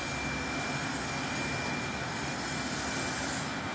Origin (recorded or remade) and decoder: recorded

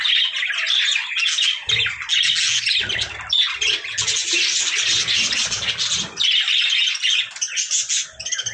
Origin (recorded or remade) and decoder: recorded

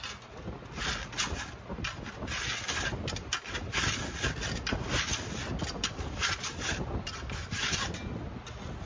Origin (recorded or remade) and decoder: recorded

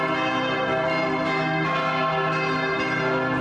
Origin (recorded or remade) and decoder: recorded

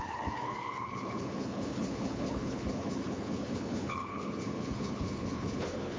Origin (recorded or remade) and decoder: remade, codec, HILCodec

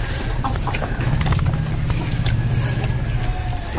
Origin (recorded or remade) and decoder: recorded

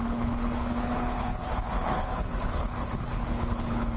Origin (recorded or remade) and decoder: remade, codec, HILCodec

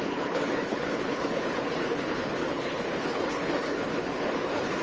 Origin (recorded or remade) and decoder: remade, codec, HILCodec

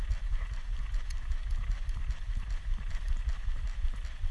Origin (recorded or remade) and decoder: recorded